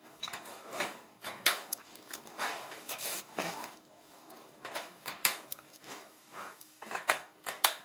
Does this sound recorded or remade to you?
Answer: remade